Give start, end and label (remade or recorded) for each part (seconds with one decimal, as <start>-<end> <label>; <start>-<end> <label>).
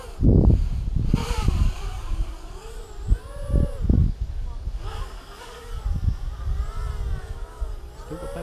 0.0-1.2 recorded; 1.2-2.7 remade; 2.7-4.0 recorded; 4.0-5.8 remade; 5.8-7.2 recorded; 7.2-7.9 remade; 7.9-8.4 recorded